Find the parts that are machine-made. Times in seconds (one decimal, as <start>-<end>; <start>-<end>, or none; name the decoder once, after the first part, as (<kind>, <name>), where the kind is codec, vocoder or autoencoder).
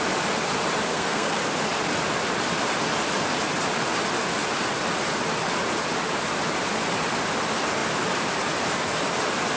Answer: 0.9-1.4 (codec, SNAC)